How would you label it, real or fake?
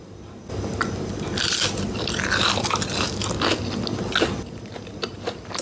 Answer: real